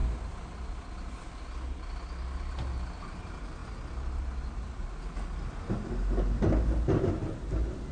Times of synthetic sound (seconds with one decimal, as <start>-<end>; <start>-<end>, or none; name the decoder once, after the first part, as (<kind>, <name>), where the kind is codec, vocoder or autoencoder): none